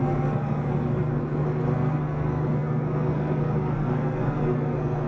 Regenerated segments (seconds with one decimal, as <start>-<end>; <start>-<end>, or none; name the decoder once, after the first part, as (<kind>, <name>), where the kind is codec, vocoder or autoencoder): 0.0-5.1 (codec, SNAC)